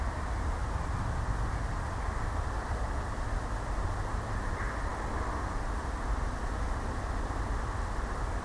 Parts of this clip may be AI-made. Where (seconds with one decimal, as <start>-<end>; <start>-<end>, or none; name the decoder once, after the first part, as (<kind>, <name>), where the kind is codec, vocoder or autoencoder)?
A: none

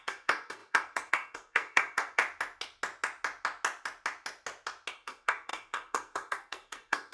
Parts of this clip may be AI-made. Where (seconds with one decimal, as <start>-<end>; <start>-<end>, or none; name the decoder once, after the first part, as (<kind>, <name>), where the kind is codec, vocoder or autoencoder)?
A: 0.0-2.2 (codec, SNAC); 4.9-7.1